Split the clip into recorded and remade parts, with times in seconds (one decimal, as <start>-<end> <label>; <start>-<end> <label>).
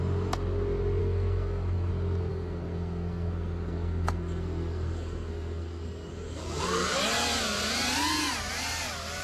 0.0-1.0 recorded; 1.0-1.9 remade; 1.9-2.3 recorded; 2.3-7.0 remade; 7.0-9.2 recorded